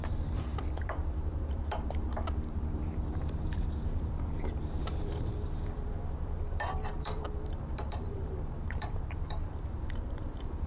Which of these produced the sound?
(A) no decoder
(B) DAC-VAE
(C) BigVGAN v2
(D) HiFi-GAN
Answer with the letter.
C